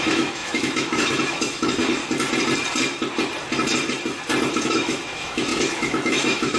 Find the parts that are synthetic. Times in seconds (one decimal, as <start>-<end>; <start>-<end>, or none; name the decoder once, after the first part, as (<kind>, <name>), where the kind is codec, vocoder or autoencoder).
0.0-2.0 (autoencoder, DAC-VAE); 4.6-6.6